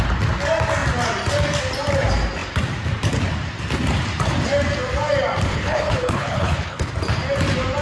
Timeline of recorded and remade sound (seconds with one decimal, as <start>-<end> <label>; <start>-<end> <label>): 0.0-5.5 recorded; 5.5-6.9 remade; 6.9-7.8 recorded